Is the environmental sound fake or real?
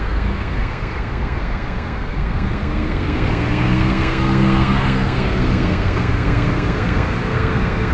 fake